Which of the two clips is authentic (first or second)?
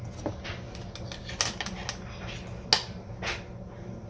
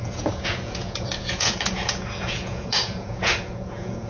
first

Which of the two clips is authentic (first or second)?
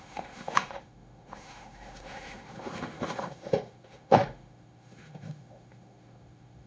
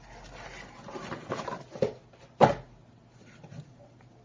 second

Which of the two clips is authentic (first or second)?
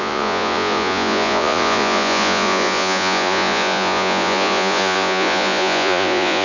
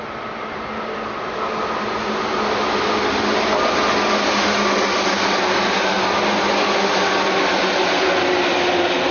second